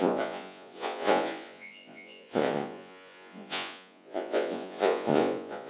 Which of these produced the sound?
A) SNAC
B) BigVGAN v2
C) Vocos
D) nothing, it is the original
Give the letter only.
C